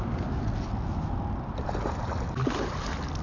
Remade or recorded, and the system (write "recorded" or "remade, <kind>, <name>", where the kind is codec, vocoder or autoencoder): recorded